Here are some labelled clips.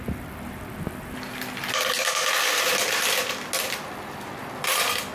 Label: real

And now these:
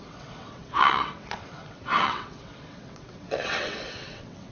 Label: fake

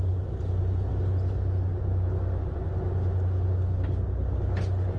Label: real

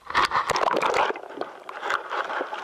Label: real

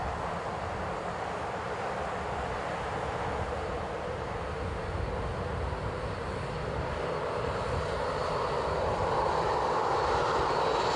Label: real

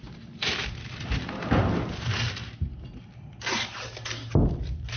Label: real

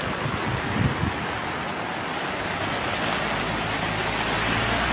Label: real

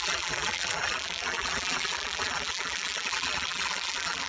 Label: fake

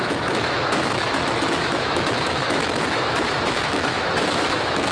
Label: fake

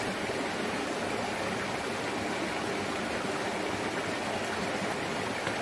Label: real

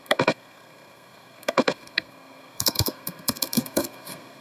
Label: fake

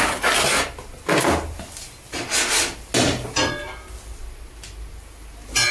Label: real